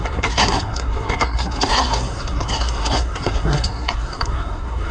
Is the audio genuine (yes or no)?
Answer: no